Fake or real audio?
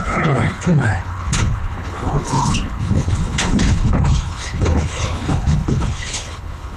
fake